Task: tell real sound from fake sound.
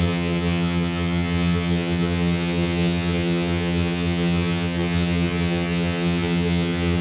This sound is fake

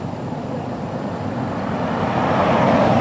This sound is real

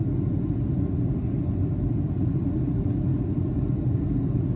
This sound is real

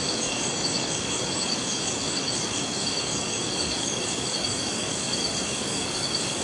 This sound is fake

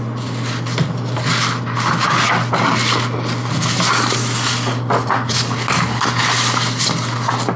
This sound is real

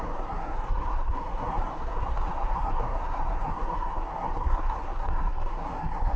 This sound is fake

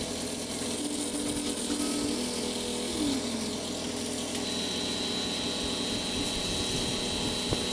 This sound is real